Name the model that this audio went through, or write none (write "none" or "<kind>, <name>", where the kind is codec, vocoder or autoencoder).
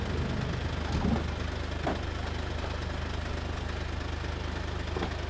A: none